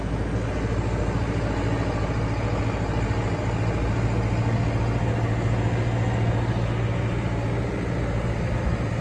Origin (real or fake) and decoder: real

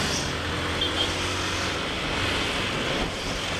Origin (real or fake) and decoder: real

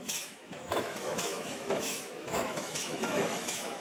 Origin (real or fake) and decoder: fake, autoencoder, DAC-VAE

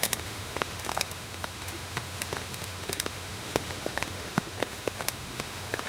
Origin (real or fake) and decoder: fake, autoencoder, DAC-VAE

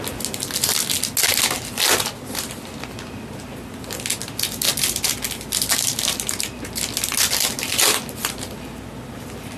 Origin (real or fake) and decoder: real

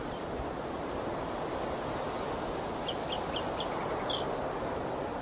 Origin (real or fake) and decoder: real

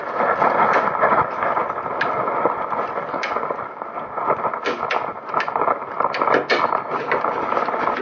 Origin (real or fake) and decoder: real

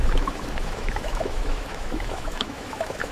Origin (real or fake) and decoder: fake, autoencoder, DAC-VAE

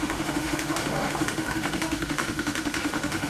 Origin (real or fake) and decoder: fake, autoencoder, DAC-VAE